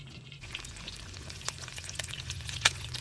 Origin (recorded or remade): remade